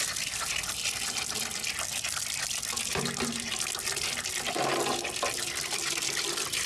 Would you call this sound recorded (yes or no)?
yes